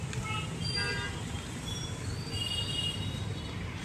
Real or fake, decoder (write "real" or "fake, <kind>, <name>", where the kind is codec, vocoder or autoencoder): real